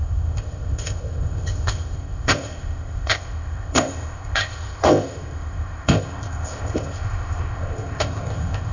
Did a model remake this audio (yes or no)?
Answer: yes